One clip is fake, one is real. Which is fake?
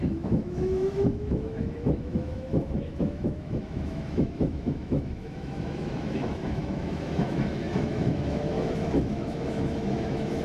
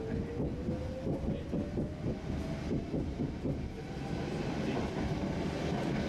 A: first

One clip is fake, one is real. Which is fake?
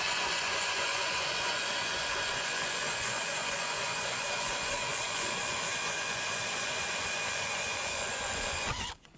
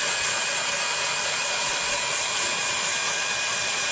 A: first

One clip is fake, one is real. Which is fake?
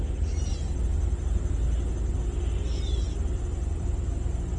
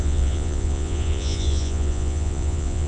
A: second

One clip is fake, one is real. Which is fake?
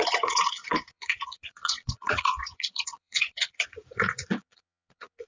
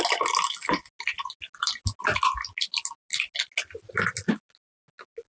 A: first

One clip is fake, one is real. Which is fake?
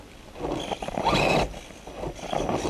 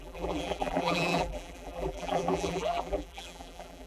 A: second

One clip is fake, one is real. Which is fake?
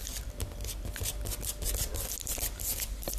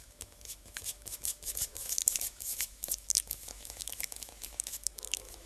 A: second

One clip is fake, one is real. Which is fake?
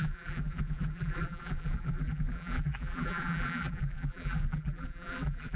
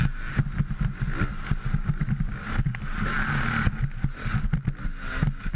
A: first